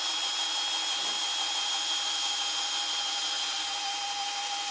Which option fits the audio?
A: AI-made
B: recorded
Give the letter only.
B